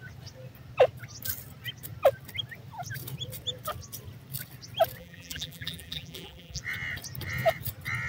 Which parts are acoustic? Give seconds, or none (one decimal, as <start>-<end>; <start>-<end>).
0.0-5.0; 6.6-8.1